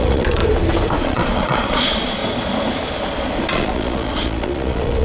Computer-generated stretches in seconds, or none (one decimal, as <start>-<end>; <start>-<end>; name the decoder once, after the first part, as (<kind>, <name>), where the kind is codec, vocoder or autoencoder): 0.0-0.4 (vocoder, Vocos); 1.0-2.2; 3.5-5.0